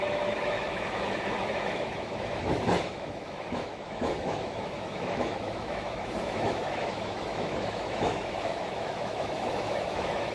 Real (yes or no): no